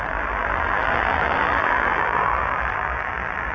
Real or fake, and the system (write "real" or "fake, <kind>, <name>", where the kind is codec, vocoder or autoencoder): fake, vocoder, BigVGAN v2